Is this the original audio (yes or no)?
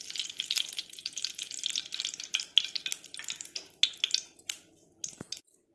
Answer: yes